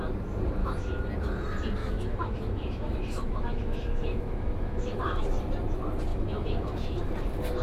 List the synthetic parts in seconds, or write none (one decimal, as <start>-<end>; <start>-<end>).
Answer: 0.6-1.1; 1.8-5.2; 6.1-7.1